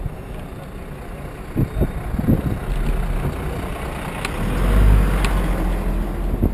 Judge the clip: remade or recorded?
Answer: recorded